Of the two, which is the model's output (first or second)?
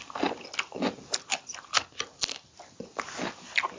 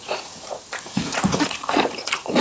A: second